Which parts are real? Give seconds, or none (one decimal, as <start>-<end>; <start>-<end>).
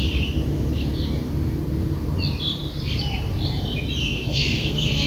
0.0-4.0